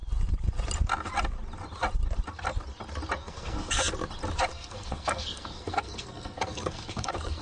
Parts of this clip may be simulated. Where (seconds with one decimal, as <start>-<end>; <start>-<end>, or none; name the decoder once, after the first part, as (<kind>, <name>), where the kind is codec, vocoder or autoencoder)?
3.2-3.8 (codec, SNAC); 4.5-7.4